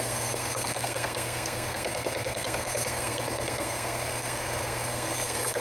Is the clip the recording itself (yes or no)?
no